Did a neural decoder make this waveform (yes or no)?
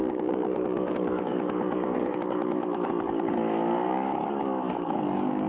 yes